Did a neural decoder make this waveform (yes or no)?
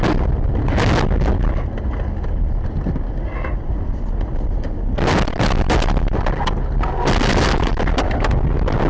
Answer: no